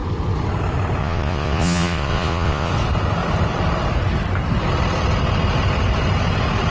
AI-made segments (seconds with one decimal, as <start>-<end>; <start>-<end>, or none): 1.0-2.7